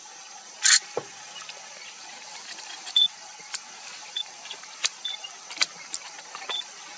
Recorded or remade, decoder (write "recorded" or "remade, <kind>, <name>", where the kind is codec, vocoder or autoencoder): recorded